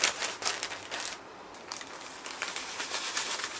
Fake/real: real